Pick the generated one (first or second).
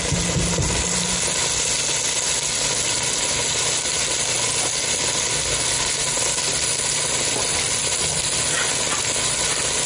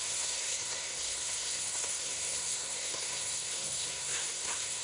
second